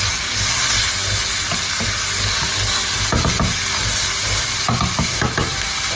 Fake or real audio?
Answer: real